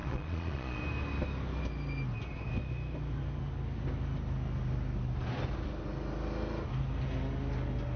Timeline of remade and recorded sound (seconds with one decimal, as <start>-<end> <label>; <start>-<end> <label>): 0.0-0.8 remade; 0.8-8.0 recorded